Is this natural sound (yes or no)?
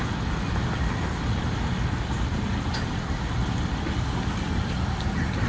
yes